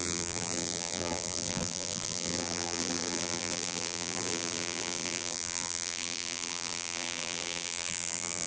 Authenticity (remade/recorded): remade